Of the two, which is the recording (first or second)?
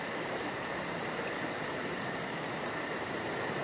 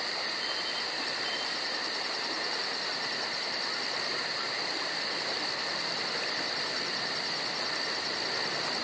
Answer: second